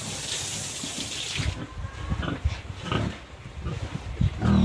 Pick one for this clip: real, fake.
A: real